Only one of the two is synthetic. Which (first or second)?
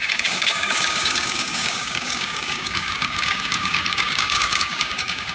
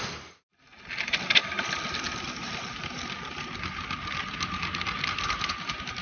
first